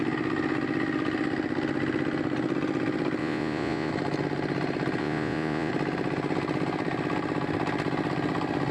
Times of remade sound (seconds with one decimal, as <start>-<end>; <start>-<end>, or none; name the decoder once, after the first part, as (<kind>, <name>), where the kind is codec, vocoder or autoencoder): 3.2-3.9 (vocoder, Vocos); 5.0-5.7